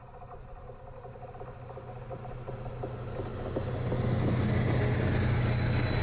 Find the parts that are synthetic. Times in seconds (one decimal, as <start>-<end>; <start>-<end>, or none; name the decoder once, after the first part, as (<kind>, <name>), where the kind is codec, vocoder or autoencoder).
none